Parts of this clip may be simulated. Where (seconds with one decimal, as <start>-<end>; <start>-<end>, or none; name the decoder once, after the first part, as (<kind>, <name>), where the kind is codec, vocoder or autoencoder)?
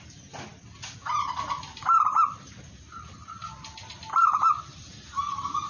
none